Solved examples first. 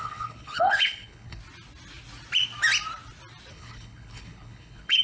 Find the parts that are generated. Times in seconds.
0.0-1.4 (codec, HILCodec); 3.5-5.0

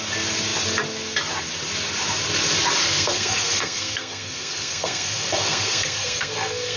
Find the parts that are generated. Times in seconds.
2.8-6.8 (codec, SNAC)